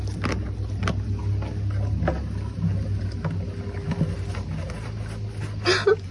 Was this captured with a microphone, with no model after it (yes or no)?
yes